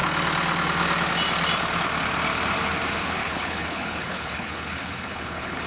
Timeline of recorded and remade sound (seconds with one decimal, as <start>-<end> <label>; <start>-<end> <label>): 0.0-3.2 recorded; 3.2-5.7 remade